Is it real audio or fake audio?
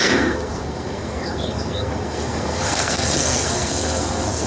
fake